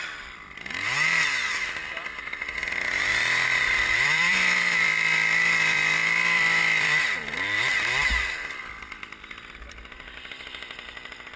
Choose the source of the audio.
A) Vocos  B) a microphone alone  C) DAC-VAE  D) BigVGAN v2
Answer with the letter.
D